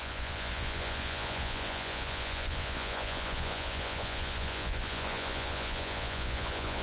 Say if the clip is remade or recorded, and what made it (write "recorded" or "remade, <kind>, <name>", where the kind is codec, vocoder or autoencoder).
remade, vocoder, Vocos